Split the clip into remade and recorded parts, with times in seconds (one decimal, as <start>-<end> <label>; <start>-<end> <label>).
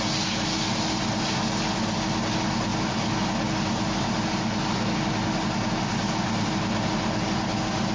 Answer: 0.0-7.9 recorded